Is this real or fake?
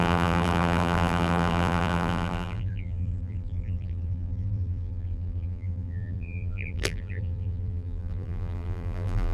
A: fake